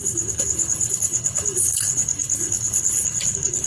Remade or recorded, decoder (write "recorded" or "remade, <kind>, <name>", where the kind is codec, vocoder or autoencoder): remade, codec, HILCodec